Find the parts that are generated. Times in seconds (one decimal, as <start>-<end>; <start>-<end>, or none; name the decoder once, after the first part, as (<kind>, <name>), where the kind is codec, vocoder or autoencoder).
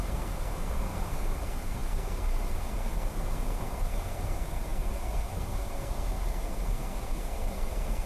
0.0-8.1 (codec, SNAC)